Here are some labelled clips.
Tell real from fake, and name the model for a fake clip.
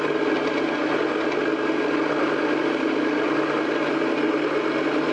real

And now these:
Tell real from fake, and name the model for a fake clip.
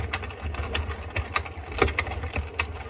real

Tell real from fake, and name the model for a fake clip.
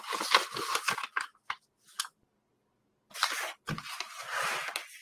real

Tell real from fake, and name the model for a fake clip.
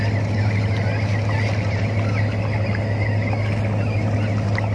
real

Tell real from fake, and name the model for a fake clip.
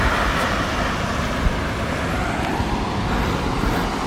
real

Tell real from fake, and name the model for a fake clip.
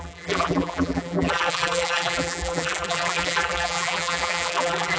fake, vocoder, BigVGAN v2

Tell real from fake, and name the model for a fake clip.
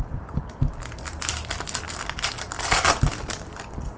fake, vocoder, BigVGAN v2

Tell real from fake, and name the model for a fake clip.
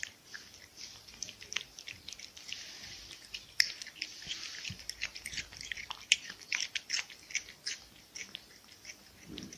fake, vocoder, BigVGAN v2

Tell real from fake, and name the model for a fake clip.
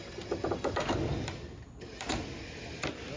real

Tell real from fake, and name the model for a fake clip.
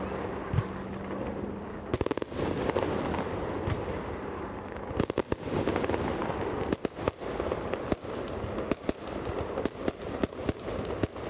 real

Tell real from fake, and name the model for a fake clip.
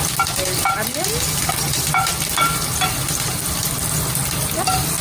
real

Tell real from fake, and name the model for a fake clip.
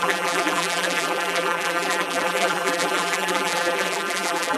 fake, vocoder, BigVGAN v2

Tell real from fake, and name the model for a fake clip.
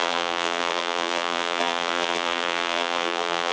fake, vocoder, BigVGAN v2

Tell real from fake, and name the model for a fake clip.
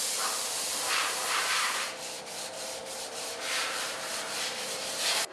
fake, vocoder, BigVGAN v2